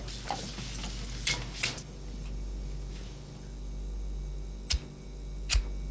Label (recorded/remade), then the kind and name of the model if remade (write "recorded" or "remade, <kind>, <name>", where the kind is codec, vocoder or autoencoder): recorded